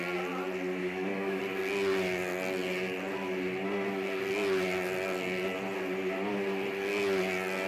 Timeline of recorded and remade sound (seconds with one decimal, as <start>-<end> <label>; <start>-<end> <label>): 0.0-0.8 recorded; 0.8-1.4 remade; 1.4-7.7 recorded